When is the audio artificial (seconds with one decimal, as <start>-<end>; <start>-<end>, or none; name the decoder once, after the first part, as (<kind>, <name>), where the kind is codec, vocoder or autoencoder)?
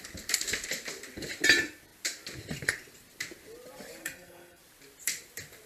4.0-4.6 (codec, SNAC)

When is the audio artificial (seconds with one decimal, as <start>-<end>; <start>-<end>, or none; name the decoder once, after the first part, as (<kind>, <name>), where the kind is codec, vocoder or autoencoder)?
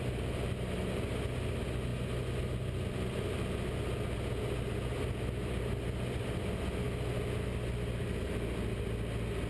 none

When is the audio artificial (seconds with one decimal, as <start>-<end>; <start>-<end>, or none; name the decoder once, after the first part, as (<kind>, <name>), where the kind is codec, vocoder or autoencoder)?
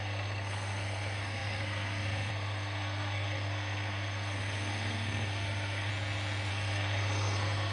0.0-5.9 (codec, SNAC); 6.5-7.7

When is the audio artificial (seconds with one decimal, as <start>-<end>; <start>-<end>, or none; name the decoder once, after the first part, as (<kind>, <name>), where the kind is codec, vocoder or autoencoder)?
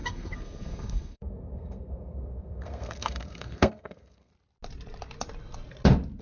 0.0-4.3 (codec, SNAC)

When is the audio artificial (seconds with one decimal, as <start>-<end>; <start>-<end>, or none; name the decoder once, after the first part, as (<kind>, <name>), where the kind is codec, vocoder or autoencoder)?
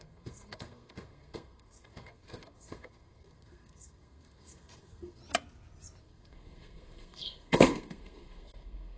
0.0-5.2 (codec, SNAC); 6.0-9.0